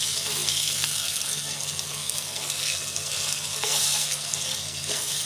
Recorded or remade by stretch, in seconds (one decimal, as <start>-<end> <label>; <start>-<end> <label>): 0.0-5.3 remade